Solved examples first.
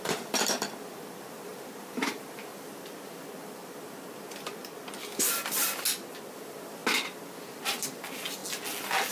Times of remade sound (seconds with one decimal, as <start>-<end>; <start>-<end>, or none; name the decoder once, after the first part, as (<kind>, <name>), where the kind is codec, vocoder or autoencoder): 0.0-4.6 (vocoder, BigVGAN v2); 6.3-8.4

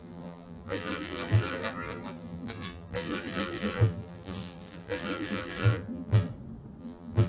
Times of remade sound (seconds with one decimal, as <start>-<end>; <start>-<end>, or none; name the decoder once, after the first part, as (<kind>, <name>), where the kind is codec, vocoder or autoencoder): 0.0-6.3 (vocoder, BigVGAN v2); 6.8-7.3

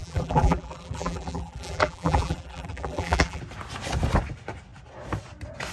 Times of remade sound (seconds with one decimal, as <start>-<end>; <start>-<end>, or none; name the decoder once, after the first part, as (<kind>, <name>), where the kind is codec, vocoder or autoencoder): 0.0-3.4 (vocoder, BigVGAN v2)

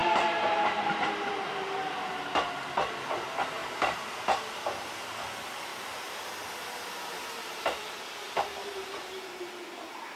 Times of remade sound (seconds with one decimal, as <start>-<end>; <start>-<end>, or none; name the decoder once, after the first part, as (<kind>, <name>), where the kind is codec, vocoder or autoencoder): 0.0-2.1 (vocoder, BigVGAN v2); 3.6-4.1; 5.7-9.4

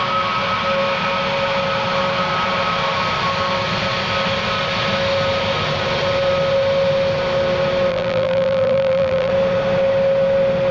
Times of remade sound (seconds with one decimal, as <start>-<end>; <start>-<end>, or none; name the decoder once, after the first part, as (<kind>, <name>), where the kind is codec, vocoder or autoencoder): 7.9-9.3 (vocoder, BigVGAN v2)

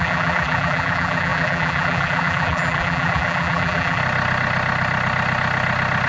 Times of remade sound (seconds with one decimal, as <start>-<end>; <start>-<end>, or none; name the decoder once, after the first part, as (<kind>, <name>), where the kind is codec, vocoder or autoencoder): 0.0-4.0 (vocoder, BigVGAN v2)